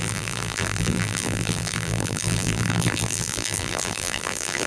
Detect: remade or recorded remade